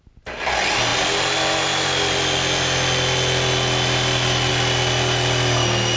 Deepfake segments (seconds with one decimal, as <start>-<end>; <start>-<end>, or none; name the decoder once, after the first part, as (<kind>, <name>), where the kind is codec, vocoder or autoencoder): none